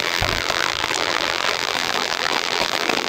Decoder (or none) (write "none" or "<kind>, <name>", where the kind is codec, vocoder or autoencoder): vocoder, BigVGAN v2